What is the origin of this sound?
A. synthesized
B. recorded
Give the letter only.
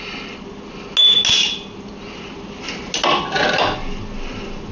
B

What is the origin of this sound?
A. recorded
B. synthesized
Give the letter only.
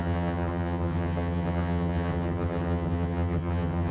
B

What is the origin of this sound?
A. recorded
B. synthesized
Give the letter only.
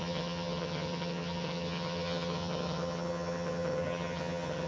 B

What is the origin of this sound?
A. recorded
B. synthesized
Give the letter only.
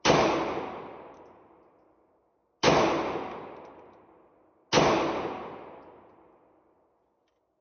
A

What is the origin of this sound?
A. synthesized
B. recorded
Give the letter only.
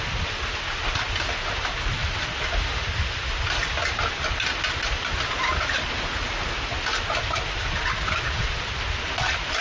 B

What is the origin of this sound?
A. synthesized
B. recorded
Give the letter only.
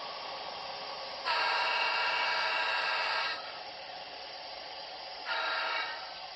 B